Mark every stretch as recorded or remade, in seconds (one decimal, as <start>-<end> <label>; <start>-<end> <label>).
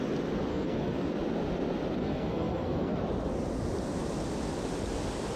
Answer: 0.0-0.5 recorded; 0.5-1.1 remade; 1.1-2.0 recorded; 2.0-3.0 remade; 3.0-5.4 recorded